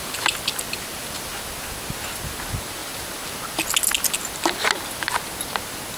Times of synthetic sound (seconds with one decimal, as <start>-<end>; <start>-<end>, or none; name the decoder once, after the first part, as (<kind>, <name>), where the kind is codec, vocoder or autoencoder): none